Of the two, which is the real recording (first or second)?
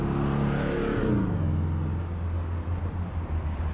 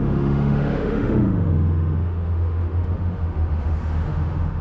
first